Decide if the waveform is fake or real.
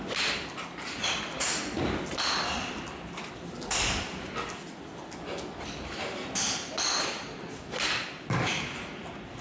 real